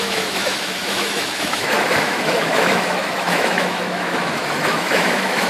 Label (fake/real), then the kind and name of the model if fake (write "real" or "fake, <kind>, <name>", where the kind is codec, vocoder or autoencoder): fake, autoencoder, DAC-VAE